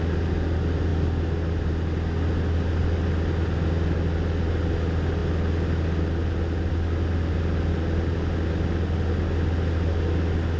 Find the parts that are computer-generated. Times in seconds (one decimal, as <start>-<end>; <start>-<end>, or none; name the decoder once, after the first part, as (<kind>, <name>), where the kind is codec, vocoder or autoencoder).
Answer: none